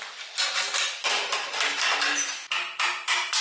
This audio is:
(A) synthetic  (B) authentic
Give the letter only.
B